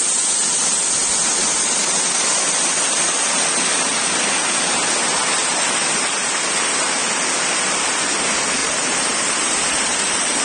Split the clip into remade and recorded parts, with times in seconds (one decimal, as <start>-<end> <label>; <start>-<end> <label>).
0.0-1.4 recorded; 1.4-1.9 remade; 1.9-8.6 recorded; 8.6-10.4 remade